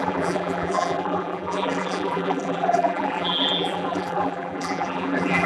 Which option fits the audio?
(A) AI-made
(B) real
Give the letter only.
A